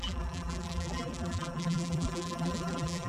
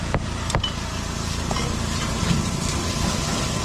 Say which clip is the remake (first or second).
first